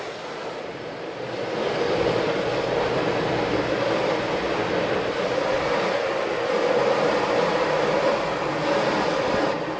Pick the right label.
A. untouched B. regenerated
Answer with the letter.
A